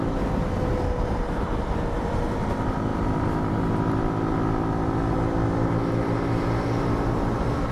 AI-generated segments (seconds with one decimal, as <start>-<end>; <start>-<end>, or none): none